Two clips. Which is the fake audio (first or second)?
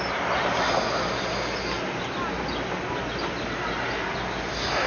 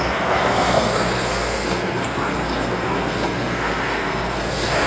second